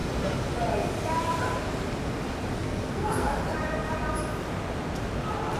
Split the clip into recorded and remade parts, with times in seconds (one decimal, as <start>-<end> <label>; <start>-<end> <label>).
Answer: 0.0-2.6 recorded; 2.6-3.3 remade; 3.3-5.6 recorded